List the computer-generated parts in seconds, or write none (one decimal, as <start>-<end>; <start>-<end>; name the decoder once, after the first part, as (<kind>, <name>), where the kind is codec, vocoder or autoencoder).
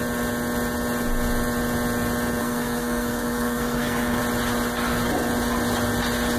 2.4-4.2 (codec, SNAC)